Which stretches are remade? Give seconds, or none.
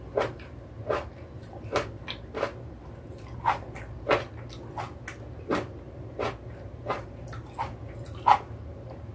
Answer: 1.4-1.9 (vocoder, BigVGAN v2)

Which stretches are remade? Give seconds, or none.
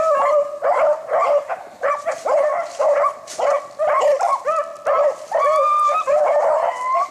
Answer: 1.2-3.6 (vocoder, BigVGAN v2)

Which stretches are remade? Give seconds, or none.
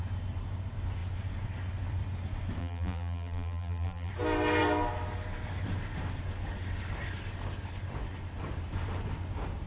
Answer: 2.6-4.1 (vocoder, BigVGAN v2)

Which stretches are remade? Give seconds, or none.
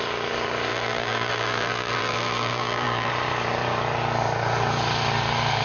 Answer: 0.7-3.1 (vocoder, BigVGAN v2)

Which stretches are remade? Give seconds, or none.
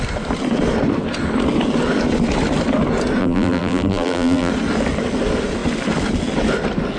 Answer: 3.2-4.5 (vocoder, BigVGAN v2)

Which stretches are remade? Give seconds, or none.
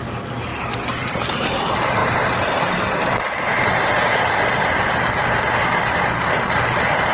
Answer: 0.5-1.6 (vocoder, BigVGAN v2)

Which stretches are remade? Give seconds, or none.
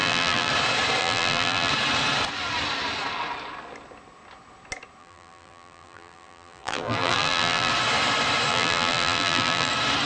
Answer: 0.0-0.5 (vocoder, BigVGAN v2); 1.0-1.7; 5.0-7.7; 8.5-9.7